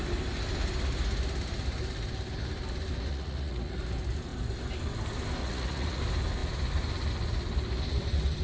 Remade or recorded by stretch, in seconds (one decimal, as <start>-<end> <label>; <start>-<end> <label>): 0.0-3.1 recorded; 3.1-3.8 remade; 3.8-5.4 recorded; 5.4-6.0 remade; 6.0-8.4 recorded